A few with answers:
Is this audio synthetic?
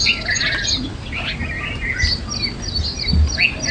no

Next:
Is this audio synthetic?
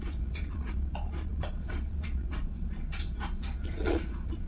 yes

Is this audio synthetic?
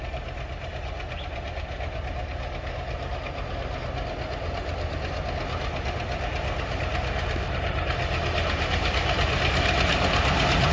no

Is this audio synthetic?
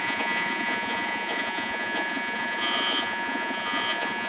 yes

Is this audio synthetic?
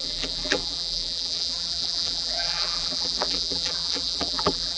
yes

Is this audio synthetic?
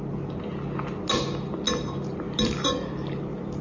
no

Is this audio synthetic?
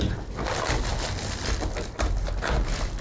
no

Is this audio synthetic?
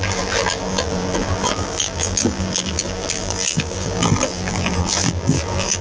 yes